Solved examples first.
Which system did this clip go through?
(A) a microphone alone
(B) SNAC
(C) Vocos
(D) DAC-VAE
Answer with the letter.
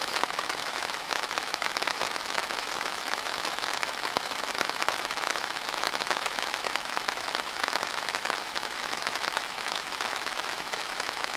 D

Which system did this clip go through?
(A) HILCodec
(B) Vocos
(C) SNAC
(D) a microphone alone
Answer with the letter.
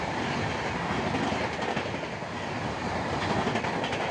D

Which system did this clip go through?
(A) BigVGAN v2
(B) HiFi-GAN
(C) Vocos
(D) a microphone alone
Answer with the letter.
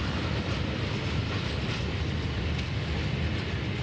D